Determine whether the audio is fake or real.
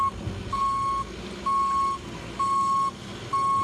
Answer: real